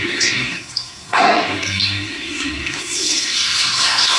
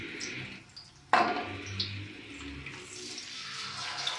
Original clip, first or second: second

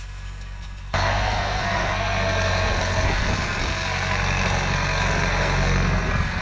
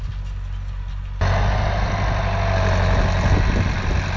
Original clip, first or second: second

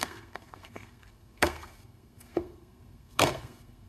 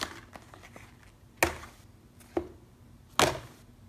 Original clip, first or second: second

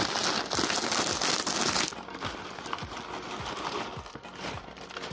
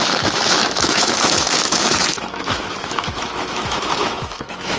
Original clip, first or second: first